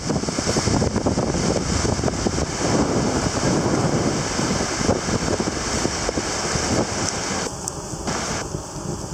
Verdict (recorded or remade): recorded